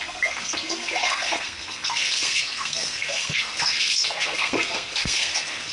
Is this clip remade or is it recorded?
remade